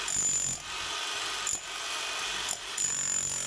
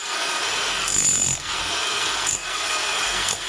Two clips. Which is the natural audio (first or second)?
first